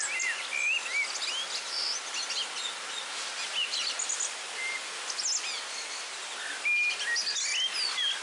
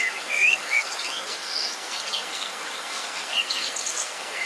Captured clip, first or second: first